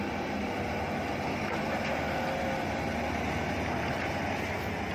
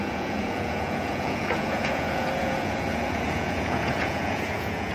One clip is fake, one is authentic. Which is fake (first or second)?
second